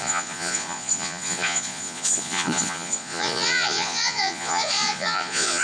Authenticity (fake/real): fake